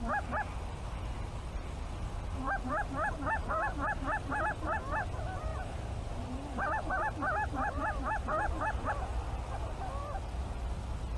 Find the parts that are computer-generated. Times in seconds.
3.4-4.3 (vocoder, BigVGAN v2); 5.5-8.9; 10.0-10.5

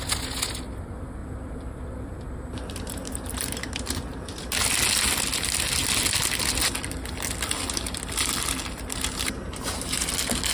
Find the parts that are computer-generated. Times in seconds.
1.2-3.9 (vocoder, BigVGAN v2); 9.4-10.1

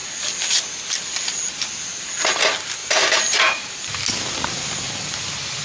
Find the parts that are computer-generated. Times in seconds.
2.8-3.7 (vocoder, BigVGAN v2)

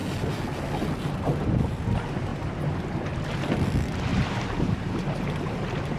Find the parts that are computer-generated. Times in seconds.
4.1-4.9 (vocoder, BigVGAN v2)

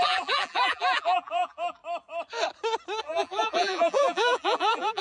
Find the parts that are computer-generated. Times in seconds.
0.0-1.8 (vocoder, BigVGAN v2); 3.0-5.0

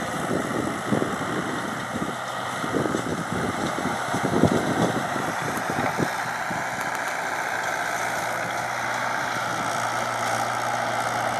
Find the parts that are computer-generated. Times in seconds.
3.1-5.9 (vocoder, BigVGAN v2)

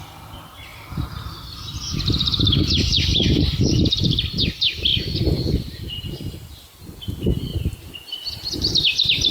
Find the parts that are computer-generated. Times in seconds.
0.7-3.6 (vocoder, BigVGAN v2); 4.9-6.1

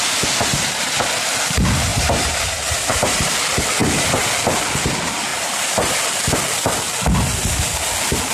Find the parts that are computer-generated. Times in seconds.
0.5-1.4 (vocoder, BigVGAN v2); 1.9-3.3; 3.8-4.3